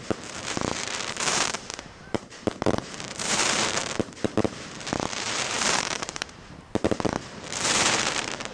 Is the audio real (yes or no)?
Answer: no